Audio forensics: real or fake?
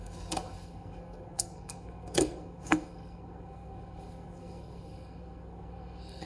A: fake